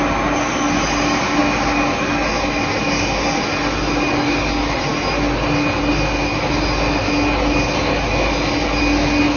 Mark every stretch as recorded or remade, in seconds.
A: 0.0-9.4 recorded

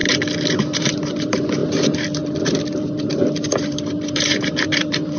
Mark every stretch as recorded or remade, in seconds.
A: 0.0-0.6 recorded; 0.6-5.2 remade

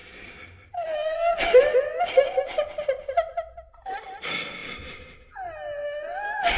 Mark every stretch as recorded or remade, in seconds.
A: 0.0-2.1 remade; 2.1-4.6 recorded; 4.6-5.3 remade; 5.3-6.6 recorded

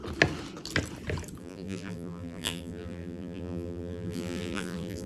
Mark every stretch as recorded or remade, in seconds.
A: 0.0-1.4 recorded; 1.4-5.1 remade

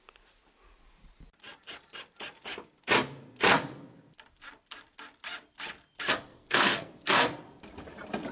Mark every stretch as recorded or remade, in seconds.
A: 0.0-6.3 recorded; 6.3-6.9 remade; 6.9-8.3 recorded

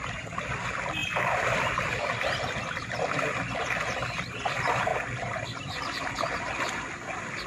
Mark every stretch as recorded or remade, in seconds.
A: 0.0-4.9 recorded; 4.9-6.1 remade; 6.1-7.5 recorded